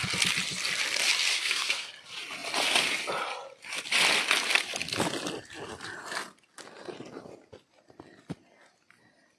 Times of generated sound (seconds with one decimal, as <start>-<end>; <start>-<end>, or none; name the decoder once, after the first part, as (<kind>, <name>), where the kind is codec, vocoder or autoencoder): 1.3-1.9 (codec, SNAC)